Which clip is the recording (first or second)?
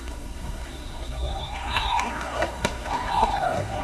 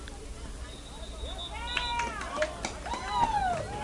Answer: second